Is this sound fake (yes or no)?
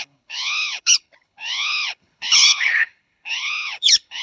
yes